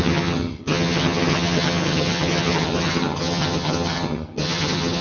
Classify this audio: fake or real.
fake